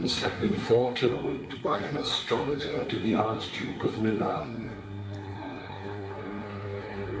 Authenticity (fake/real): fake